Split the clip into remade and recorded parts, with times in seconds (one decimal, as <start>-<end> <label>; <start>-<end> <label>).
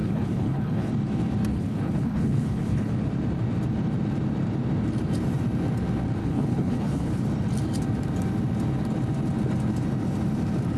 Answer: 0.0-0.9 remade; 0.9-1.5 recorded; 1.5-2.9 remade; 2.9-6.2 recorded; 6.2-7.2 remade; 7.2-10.8 recorded